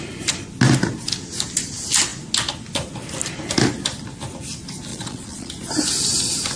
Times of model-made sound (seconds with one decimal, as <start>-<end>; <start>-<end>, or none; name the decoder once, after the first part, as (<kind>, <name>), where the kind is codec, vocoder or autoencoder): 4.9-5.5 (vocoder, Vocos)